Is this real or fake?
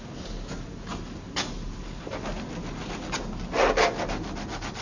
real